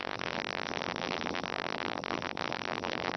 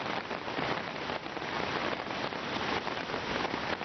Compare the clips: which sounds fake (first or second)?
first